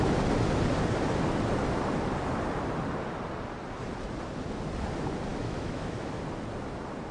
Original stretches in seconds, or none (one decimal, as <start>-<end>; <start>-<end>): 0.0-5.3; 6.2-7.1